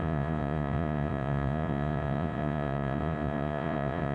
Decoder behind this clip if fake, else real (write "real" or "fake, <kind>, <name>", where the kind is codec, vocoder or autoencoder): fake, vocoder, Vocos